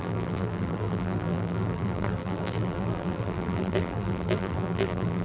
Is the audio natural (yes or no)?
no